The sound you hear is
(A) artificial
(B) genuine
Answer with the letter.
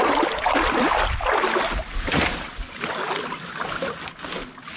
B